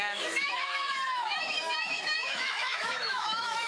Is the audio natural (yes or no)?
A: no